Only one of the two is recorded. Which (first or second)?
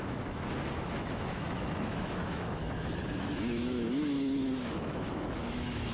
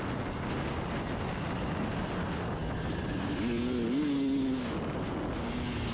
second